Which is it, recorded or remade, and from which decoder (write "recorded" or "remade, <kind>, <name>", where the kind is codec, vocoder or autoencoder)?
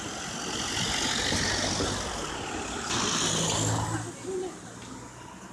recorded